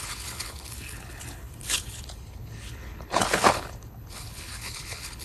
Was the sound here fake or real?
fake